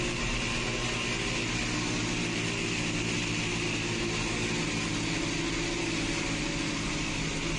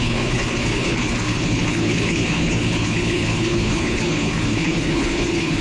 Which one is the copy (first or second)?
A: second